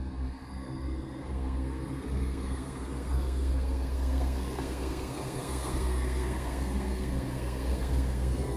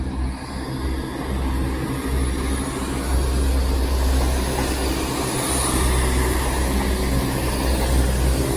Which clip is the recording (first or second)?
second